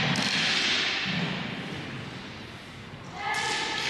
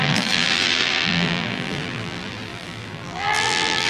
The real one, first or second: first